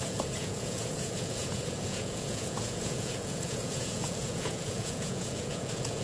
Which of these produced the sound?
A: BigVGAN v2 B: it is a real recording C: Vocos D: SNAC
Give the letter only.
C